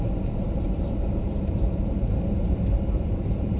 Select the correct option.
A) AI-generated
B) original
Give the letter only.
A